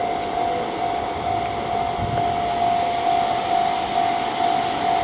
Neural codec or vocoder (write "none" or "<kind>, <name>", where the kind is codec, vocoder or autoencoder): none